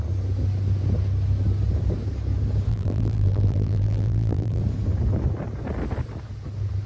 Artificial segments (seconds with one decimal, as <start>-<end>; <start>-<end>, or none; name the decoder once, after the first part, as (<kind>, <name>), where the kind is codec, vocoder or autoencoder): 2.7-4.6 (vocoder, BigVGAN v2)